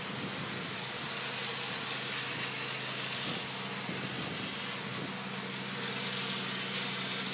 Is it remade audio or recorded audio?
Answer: recorded